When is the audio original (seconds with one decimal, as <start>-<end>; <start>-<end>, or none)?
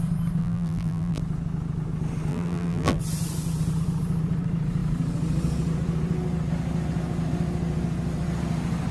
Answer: 0.0-0.4; 1.2-2.3; 3.0-8.9